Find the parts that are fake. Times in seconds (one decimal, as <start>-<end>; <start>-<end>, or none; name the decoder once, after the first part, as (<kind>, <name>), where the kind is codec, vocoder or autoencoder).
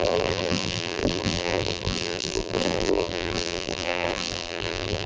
0.0-5.1 (vocoder, BigVGAN v2)